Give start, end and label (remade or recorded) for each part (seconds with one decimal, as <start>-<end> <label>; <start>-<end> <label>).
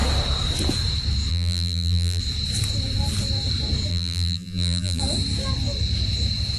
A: 0.0-1.3 recorded; 1.3-2.2 remade; 2.2-3.9 recorded; 3.9-5.0 remade; 5.0-6.6 recorded